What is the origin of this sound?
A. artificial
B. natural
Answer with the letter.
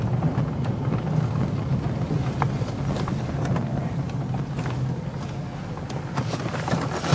B